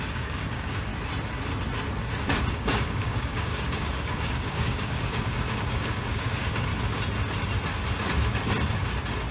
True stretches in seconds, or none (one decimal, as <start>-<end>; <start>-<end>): 0.9-2.5; 6.7-9.3